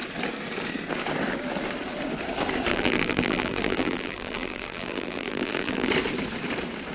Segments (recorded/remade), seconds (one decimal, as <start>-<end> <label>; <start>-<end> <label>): 0.0-2.7 recorded; 2.7-5.9 remade; 5.9-6.9 recorded